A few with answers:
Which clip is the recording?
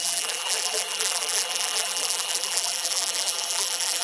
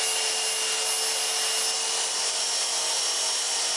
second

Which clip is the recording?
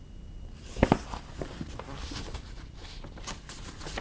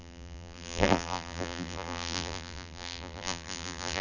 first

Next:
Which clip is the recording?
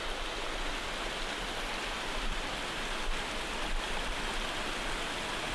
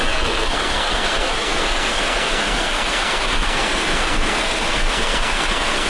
first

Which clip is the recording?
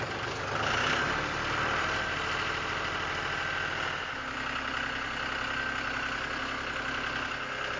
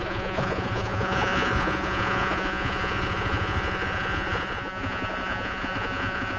first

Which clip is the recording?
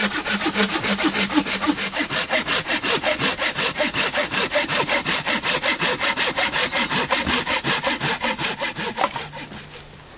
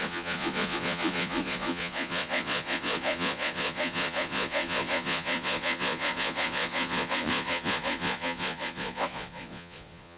first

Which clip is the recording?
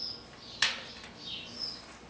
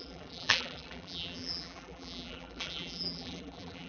first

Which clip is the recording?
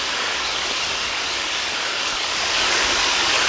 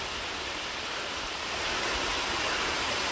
second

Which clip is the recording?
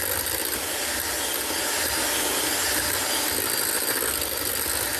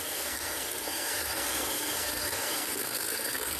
first